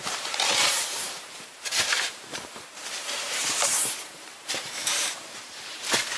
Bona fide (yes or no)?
no